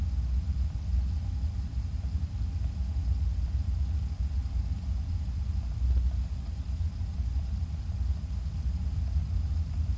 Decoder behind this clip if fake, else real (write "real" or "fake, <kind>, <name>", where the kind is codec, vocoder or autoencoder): real